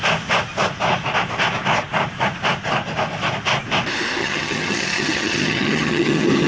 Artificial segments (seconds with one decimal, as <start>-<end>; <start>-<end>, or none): 4.2-6.5